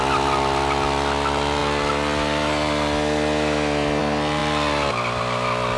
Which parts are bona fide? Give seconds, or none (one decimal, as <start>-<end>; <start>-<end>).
0.0-5.8